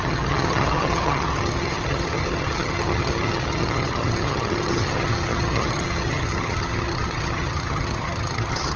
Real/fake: fake